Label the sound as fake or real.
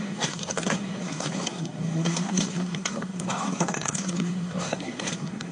fake